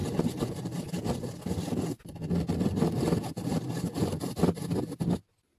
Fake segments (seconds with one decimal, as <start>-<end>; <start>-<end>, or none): 0.0-1.4; 2.2-4.4